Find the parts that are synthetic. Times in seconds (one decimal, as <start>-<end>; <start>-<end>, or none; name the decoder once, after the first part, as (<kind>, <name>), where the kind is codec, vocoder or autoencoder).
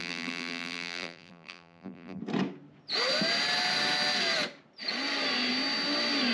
0.0-2.2 (vocoder, BigVGAN v2)